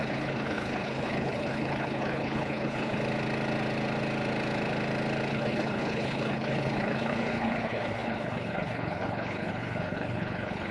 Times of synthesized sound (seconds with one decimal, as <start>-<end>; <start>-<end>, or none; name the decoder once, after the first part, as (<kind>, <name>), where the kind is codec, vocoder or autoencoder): 0.0-3.0 (codec, HILCodec); 5.3-10.7